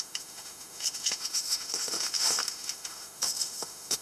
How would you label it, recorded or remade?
remade